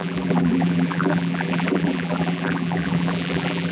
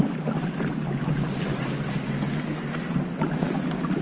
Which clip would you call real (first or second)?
second